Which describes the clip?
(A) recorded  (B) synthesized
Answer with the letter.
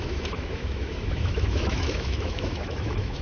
B